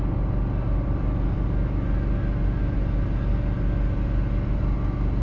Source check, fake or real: real